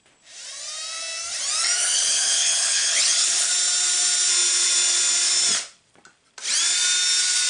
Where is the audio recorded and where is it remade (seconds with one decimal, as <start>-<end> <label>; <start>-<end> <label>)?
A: 0.0-1.8 recorded; 1.8-3.5 remade; 3.5-7.5 recorded